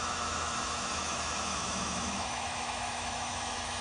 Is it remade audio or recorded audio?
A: remade